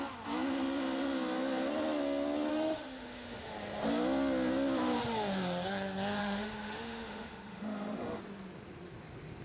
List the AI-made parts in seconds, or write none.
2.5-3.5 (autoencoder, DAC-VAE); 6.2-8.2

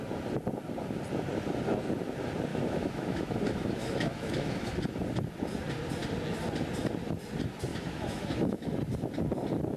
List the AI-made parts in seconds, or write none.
2.5-4.7 (autoencoder, DAC-VAE); 7.7-8.7